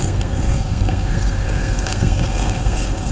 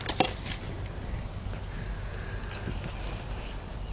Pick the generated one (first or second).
first